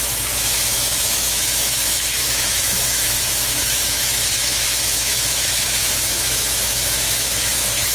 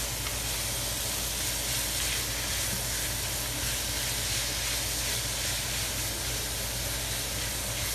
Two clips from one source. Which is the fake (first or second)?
first